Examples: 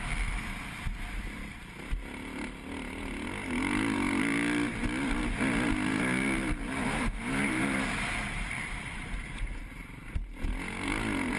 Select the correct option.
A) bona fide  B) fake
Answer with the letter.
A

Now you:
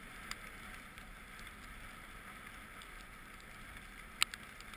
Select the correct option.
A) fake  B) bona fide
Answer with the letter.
B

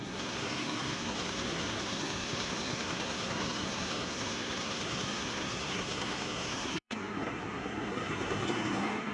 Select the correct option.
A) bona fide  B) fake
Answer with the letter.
B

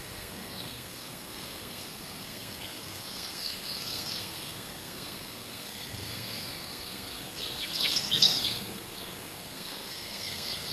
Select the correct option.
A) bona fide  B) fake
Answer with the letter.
B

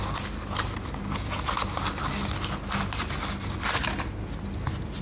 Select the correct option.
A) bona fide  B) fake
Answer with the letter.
A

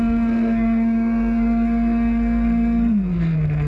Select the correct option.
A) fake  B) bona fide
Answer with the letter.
A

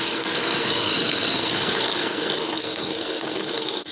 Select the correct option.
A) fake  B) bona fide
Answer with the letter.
A